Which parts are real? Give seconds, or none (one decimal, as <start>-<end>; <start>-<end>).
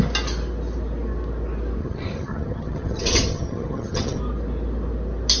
0.0-1.8; 4.2-5.4